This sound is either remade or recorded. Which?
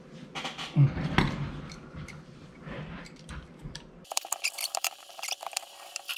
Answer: remade